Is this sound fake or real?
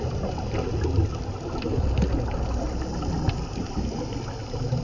real